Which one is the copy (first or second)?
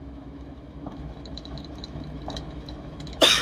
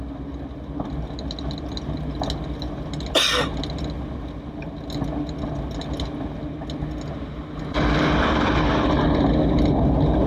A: first